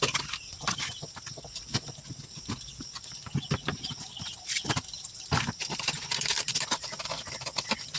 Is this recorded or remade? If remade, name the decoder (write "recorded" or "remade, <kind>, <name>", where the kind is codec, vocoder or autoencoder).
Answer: recorded